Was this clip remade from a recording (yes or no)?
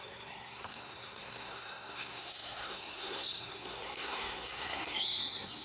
yes